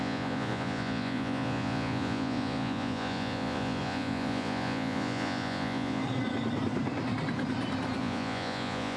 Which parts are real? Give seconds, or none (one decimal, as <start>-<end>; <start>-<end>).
6.0-8.0